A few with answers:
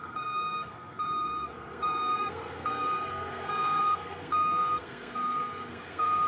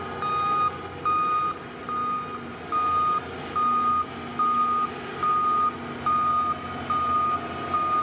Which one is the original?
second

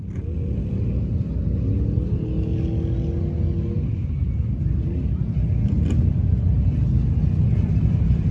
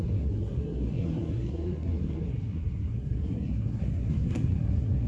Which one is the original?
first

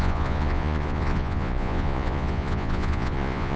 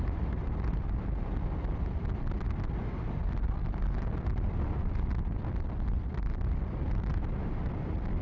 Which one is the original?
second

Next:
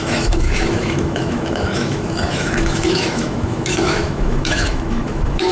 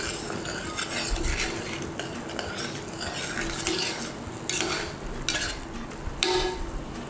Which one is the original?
second